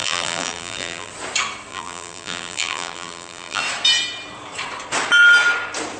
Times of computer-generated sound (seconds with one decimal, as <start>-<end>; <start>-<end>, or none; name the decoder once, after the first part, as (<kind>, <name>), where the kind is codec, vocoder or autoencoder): 0.0-1.1 (vocoder, BigVGAN v2); 1.7-3.6